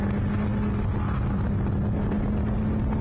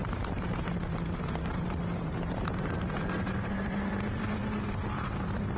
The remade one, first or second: second